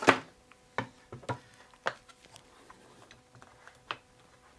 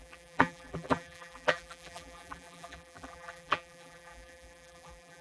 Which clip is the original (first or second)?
first